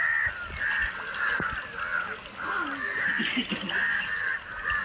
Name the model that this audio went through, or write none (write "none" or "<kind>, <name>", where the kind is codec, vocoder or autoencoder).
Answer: none